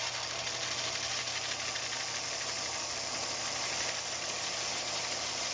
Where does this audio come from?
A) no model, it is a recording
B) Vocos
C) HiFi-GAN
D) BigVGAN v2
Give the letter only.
A